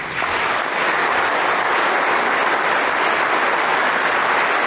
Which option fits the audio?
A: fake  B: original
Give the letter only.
B